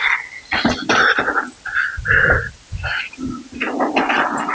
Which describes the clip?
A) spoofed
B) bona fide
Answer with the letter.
B